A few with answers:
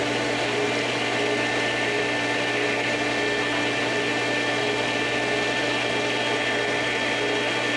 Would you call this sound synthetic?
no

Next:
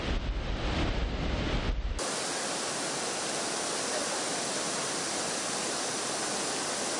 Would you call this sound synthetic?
no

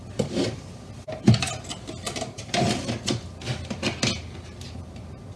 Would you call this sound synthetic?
no